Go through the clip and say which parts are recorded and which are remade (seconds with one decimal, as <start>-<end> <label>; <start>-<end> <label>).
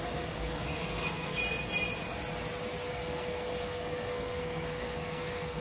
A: 0.0-1.4 remade; 1.4-2.9 recorded; 2.9-5.6 remade